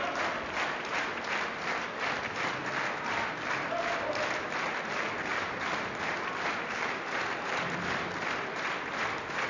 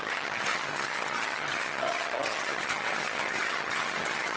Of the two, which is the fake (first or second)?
second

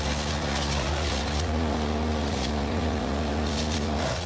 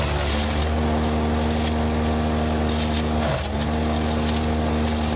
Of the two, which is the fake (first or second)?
first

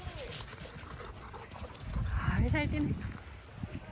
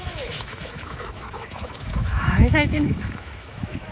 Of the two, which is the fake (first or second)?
second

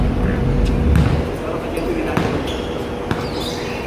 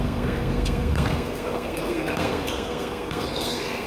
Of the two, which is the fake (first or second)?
second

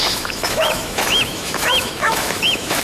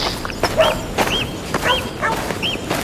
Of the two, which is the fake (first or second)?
first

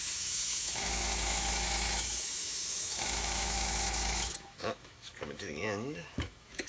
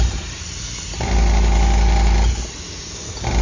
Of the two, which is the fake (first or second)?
first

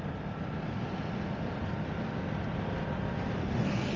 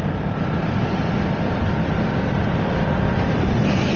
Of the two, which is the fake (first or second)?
second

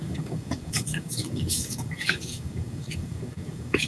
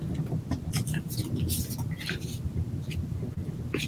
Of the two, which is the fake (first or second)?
first